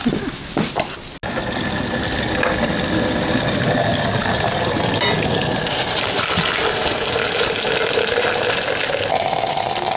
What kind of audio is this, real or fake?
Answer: real